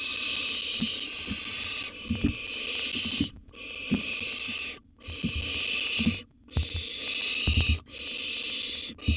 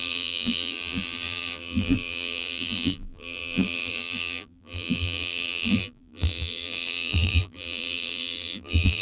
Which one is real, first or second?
first